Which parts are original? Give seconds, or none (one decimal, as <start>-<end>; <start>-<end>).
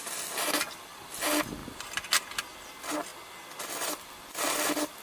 0.0-5.0